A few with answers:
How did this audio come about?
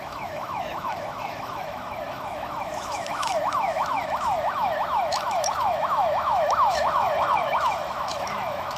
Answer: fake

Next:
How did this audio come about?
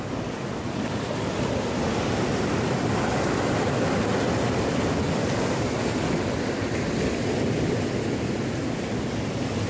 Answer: real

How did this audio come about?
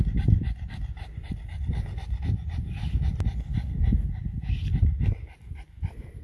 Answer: real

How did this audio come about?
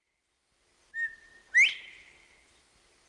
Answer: real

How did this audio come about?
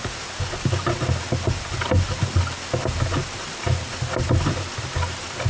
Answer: real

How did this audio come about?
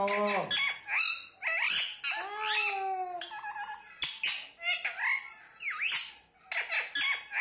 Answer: real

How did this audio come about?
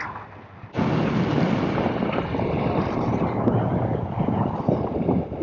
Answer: real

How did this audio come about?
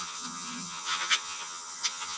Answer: fake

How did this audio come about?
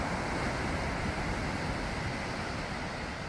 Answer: real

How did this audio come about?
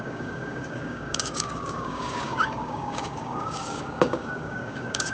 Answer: fake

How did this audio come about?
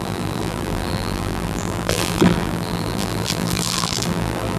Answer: fake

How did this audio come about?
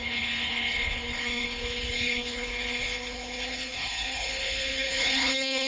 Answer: fake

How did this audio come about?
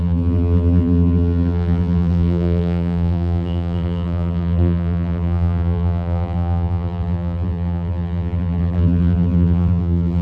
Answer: fake